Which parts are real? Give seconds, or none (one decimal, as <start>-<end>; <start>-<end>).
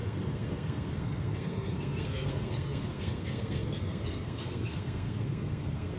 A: none